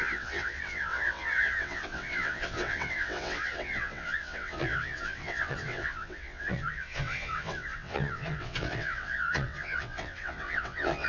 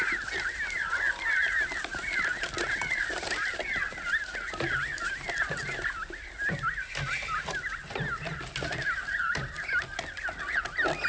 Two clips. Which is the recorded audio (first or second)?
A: second